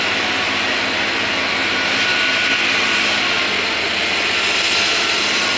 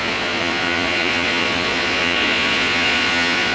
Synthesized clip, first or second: second